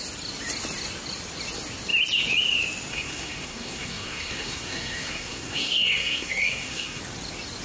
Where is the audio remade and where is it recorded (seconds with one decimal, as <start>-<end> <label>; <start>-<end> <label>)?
0.0-2.9 recorded; 2.9-7.0 remade; 7.0-7.6 recorded